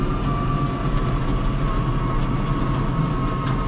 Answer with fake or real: real